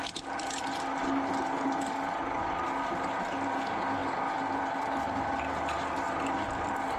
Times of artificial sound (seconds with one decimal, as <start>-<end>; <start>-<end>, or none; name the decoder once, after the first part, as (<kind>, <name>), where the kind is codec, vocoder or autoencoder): none